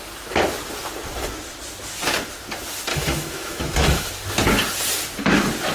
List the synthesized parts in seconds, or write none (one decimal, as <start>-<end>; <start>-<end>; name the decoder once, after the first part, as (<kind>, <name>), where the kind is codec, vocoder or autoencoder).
2.9-4.1 (autoencoder, DAC-VAE)